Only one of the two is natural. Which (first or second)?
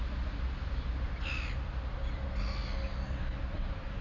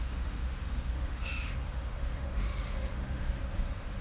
first